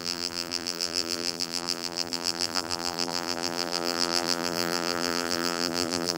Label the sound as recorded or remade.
remade